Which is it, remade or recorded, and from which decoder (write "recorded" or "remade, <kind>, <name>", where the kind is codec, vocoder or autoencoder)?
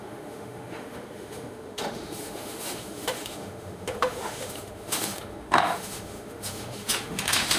remade, autoencoder, DAC-VAE